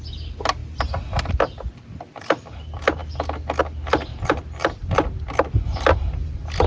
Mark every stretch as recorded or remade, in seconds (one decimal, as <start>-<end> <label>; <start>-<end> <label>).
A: 0.0-4.1 recorded; 4.1-4.9 remade; 4.9-6.7 recorded